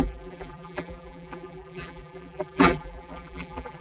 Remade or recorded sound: remade